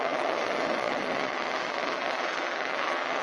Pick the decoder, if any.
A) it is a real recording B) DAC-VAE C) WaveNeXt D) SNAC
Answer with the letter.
C